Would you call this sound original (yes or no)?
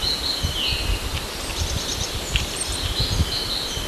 no